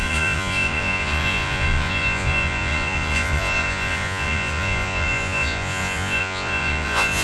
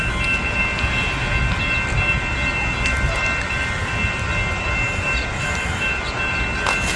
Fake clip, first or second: first